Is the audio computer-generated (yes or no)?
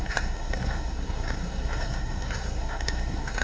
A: yes